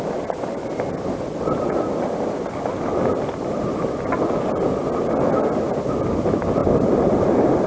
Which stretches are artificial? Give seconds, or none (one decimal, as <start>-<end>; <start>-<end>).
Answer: none